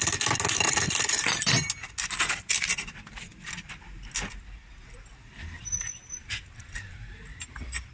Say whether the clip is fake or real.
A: real